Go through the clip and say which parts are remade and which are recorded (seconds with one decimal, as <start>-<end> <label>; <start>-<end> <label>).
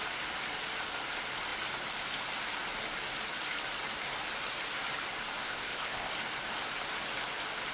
0.0-5.4 recorded; 5.4-6.1 remade; 6.1-7.7 recorded